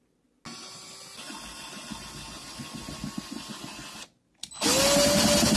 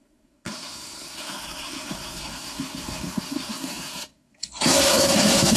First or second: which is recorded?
first